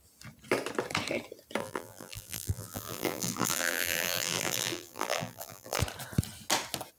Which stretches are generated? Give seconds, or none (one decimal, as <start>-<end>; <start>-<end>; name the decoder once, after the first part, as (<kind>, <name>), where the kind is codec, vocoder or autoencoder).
1.6-5.8 (vocoder, BigVGAN v2)